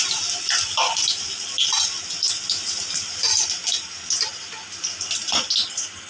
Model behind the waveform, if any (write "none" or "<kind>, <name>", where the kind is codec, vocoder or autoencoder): none